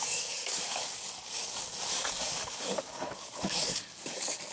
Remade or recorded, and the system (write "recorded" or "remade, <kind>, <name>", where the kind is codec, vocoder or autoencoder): remade, codec, DAC